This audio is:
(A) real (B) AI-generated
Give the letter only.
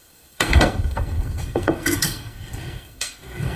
B